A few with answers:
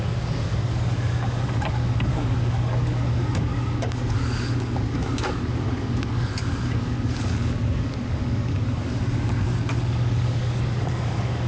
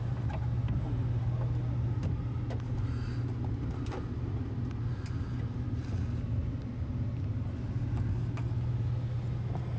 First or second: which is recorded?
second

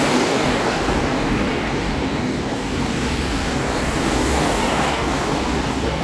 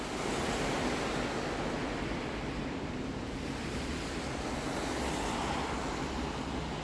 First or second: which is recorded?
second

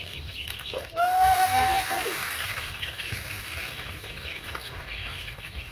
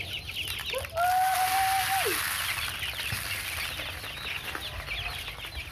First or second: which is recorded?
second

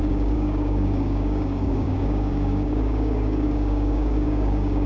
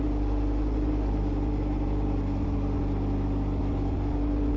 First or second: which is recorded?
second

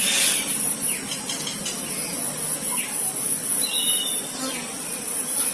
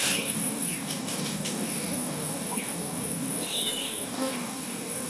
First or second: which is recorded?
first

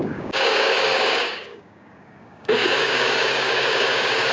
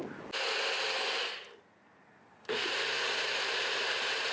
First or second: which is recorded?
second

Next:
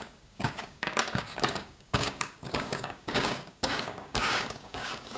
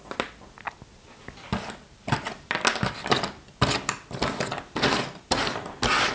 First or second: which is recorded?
second